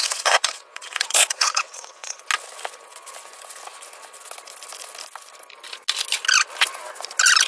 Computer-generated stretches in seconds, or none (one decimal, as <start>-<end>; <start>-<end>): 0.0-2.2